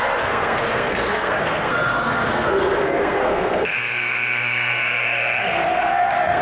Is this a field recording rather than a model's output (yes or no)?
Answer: no